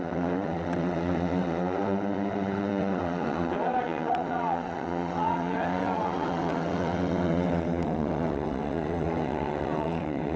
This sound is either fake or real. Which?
fake